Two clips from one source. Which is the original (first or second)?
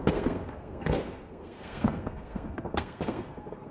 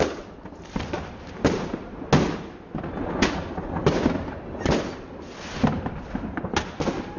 second